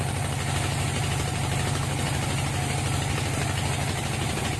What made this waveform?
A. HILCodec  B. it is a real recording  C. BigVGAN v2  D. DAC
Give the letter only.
B